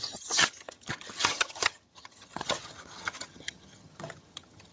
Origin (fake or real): fake